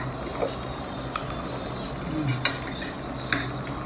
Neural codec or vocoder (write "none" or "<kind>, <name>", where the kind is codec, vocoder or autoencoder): none